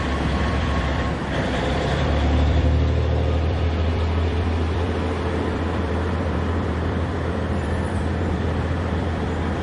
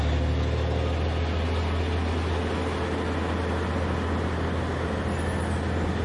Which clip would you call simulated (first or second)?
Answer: first